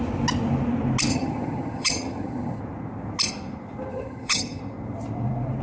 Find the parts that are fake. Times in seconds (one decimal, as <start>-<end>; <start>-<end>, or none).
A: 1.1-2.6; 3.9-4.6